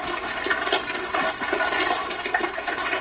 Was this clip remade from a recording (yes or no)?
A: no